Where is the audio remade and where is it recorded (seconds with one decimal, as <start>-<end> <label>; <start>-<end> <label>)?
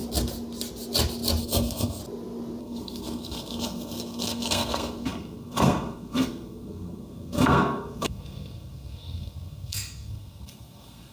0.0-1.4 recorded; 1.4-2.0 remade; 2.0-2.6 recorded; 2.6-11.1 remade